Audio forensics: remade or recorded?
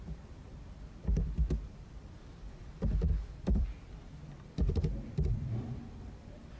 remade